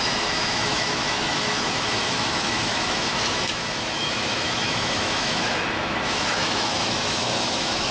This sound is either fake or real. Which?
fake